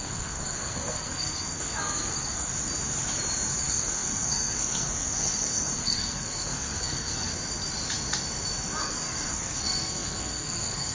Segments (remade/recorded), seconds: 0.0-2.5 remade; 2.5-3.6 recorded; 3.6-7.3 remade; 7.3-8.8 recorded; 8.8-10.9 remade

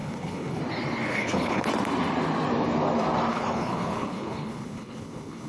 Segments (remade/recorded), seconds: 0.0-0.6 remade; 0.6-1.1 recorded; 1.1-1.7 remade; 1.7-3.3 recorded; 3.3-5.5 remade

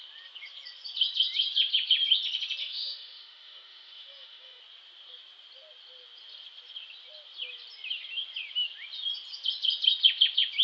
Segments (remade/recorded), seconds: 0.0-2.6 recorded; 2.6-4.6 remade; 4.6-10.6 recorded

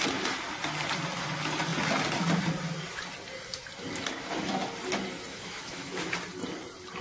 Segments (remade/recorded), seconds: 0.0-5.3 recorded; 5.3-6.1 remade; 6.1-7.0 recorded

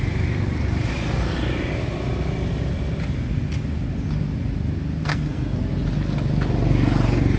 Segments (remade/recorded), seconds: 0.0-5.0 recorded; 5.0-5.6 remade; 5.6-7.4 recorded

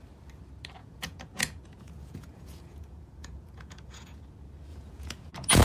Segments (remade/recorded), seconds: 0.0-0.8 recorded; 0.8-4.2 remade; 4.2-4.7 recorded; 4.7-5.6 remade

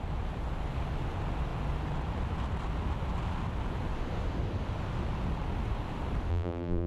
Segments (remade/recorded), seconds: 0.0-6.3 recorded; 6.3-6.9 remade

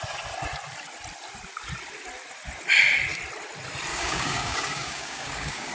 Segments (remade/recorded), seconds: 0.0-3.9 recorded; 3.9-5.7 remade